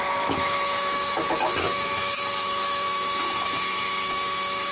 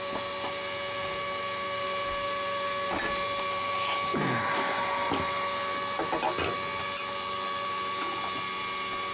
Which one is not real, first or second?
first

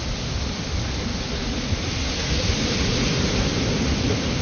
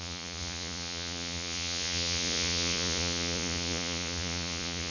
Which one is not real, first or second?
second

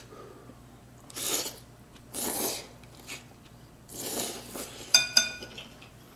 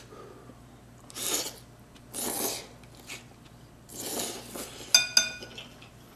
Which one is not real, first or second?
first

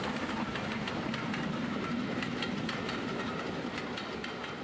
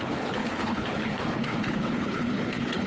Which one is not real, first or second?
second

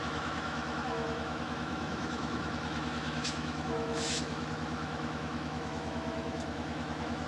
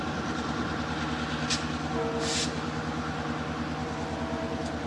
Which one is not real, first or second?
first